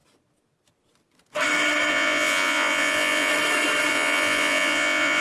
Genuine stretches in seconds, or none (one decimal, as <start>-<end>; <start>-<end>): 0.0-1.9; 3.3-3.9